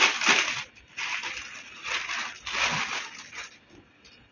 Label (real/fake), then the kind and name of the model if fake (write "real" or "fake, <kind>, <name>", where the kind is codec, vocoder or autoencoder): real